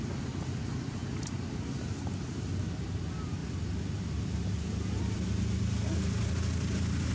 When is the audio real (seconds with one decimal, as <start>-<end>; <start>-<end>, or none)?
0.0-7.1

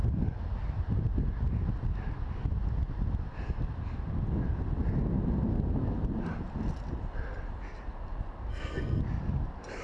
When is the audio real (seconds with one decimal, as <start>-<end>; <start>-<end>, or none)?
0.0-8.5; 9.0-9.8

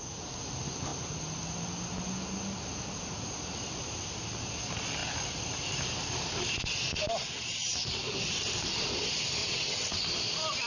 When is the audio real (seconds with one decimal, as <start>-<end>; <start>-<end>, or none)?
0.0-9.4; 10.0-10.7

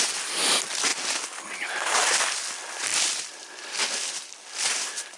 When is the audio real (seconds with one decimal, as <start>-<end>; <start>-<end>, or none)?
0.0-2.9; 4.3-5.2

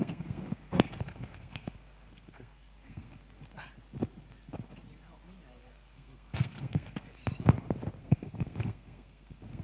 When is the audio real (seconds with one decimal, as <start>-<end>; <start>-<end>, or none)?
3.2-5.6; 7.2-8.0